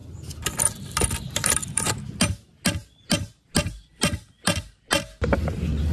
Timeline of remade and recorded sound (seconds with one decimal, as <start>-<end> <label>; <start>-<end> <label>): 0.0-1.9 remade; 1.9-3.9 recorded; 3.9-4.4 remade; 4.4-5.9 recorded